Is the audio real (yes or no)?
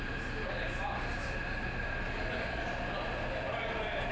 yes